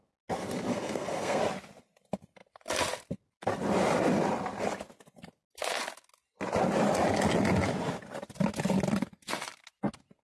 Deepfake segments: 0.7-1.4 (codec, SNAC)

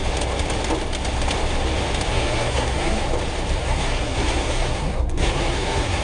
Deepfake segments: 2.1-3.0 (codec, SNAC); 3.6-6.0